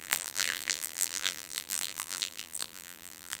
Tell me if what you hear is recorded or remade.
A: remade